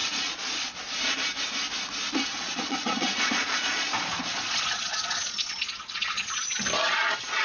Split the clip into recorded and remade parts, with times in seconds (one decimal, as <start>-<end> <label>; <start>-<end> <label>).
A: 0.0-0.8 remade; 0.8-2.3 recorded; 2.3-6.7 remade; 6.7-7.4 recorded